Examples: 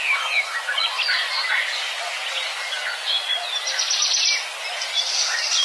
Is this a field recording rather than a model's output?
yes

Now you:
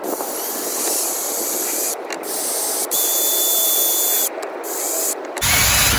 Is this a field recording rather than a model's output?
yes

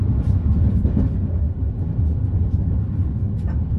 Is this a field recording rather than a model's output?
no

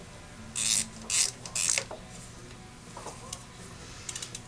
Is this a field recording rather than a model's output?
yes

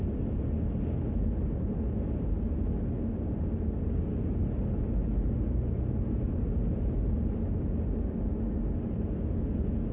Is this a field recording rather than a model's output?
yes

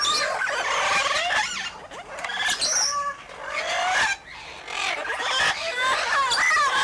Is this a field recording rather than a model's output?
yes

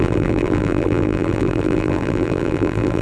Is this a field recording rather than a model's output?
no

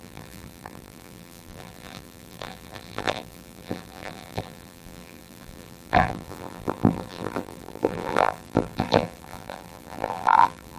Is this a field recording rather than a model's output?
no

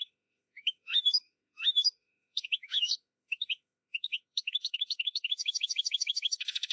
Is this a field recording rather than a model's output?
no